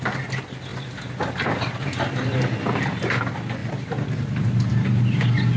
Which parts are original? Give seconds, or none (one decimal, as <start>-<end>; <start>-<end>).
0.0-0.7; 2.0-3.6; 5.0-5.6